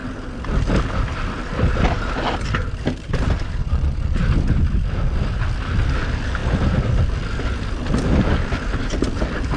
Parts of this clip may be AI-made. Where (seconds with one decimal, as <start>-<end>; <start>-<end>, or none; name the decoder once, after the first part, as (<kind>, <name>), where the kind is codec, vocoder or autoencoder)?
3.6-4.2 (vocoder, Vocos)